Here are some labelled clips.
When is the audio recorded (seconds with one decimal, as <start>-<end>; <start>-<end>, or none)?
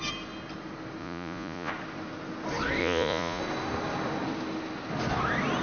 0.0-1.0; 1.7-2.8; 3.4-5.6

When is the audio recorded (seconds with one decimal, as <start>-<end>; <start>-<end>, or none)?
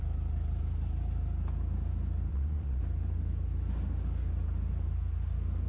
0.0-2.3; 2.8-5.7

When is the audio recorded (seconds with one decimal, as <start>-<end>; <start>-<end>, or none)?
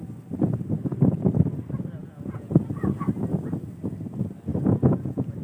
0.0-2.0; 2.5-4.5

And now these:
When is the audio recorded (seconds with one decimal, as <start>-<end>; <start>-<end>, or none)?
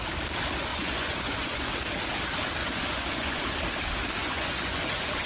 0.0-0.7; 1.7-2.6; 3.4-4.2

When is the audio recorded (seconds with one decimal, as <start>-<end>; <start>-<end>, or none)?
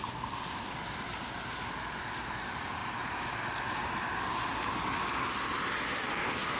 0.0-6.6